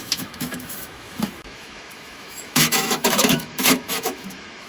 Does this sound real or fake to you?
fake